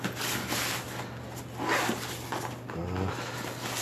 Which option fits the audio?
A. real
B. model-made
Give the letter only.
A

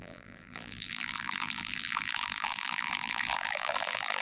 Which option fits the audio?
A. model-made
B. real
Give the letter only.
A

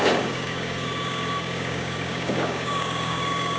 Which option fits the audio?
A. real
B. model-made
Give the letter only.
B